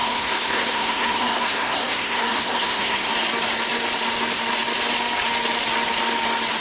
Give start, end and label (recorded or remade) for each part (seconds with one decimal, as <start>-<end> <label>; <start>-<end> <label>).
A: 0.0-3.1 remade; 3.1-6.6 recorded